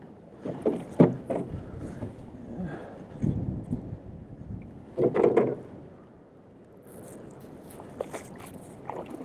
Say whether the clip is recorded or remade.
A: recorded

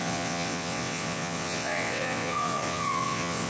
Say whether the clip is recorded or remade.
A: remade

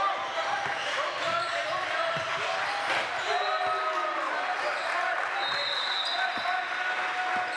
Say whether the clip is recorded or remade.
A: recorded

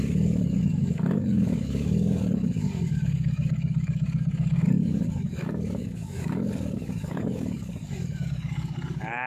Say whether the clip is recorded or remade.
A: remade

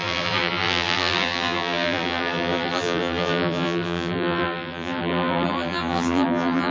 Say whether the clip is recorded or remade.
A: remade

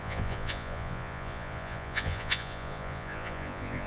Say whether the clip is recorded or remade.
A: remade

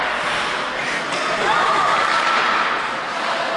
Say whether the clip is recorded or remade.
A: recorded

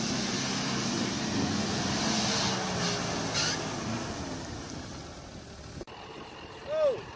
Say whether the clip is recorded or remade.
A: recorded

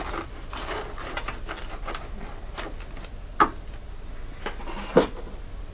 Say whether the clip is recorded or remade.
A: recorded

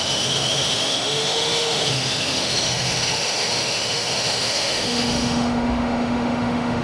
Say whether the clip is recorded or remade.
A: remade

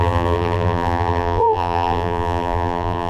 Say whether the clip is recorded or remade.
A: remade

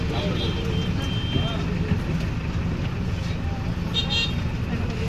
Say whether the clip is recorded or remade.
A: recorded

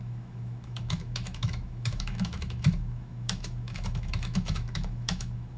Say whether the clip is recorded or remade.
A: remade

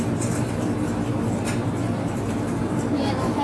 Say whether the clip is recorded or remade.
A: remade